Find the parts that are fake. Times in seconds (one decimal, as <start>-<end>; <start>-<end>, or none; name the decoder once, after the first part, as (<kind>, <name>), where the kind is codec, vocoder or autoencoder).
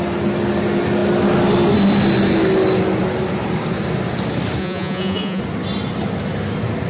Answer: 4.6-5.4 (vocoder, Vocos)